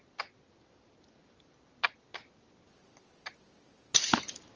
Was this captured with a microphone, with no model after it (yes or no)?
yes